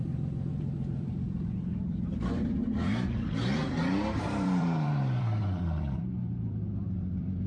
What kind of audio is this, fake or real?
fake